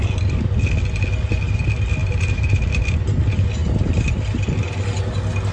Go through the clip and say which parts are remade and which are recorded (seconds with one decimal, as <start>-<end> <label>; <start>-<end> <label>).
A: 0.0-2.0 recorded; 2.0-2.8 remade; 2.8-5.5 recorded